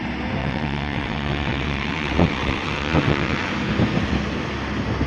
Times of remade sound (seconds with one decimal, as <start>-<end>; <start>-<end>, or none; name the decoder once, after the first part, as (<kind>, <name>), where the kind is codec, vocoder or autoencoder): 0.4-3.5 (vocoder, WaveNeXt)